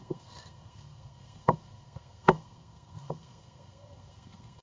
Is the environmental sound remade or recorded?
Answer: remade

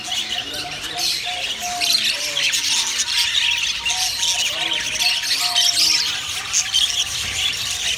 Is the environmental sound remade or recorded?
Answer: recorded